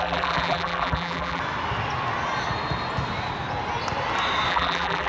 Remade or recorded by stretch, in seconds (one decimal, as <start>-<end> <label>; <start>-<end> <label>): 0.0-1.4 remade; 1.4-4.5 recorded; 4.5-5.1 remade